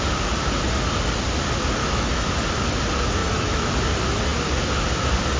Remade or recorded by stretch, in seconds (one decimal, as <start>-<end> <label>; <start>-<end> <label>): 0.0-1.8 recorded; 1.8-2.3 remade; 2.3-3.2 recorded; 3.2-3.7 remade; 3.7-5.4 recorded